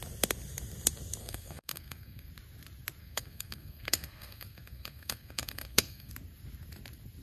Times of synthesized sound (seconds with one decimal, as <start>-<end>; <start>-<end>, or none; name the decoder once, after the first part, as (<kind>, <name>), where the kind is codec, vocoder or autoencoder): 1.2-2.3 (codec, SNAC); 3.0-6.1